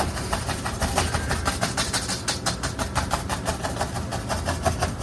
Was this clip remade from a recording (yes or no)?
no